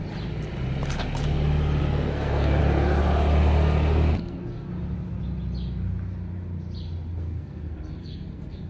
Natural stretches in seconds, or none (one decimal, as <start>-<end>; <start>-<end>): 0.0-1.8; 2.6-4.1; 4.7-7.1